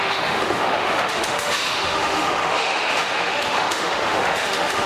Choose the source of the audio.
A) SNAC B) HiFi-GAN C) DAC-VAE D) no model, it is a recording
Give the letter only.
C